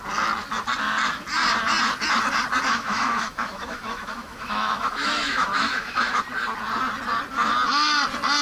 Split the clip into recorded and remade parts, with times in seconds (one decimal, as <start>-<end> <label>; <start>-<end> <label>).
0.0-2.7 recorded; 2.7-6.2 remade; 6.2-8.4 recorded